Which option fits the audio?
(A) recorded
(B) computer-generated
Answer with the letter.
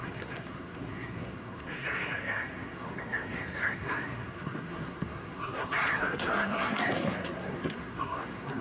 B